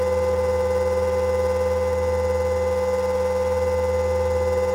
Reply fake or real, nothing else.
real